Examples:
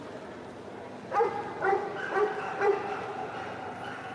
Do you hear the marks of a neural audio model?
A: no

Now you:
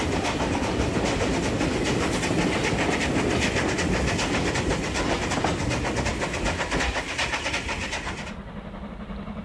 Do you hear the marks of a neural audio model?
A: no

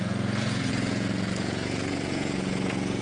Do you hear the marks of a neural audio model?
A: yes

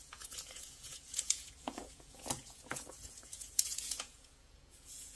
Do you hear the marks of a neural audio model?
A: yes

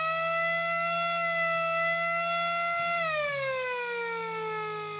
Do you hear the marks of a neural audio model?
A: no